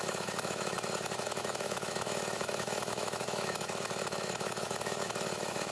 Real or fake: fake